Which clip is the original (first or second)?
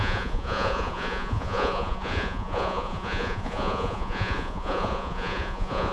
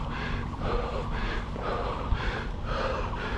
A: second